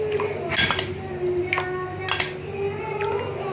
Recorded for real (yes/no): yes